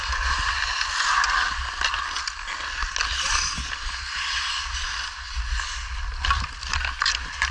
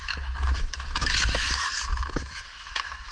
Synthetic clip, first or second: second